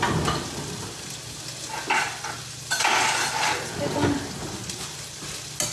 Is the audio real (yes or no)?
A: yes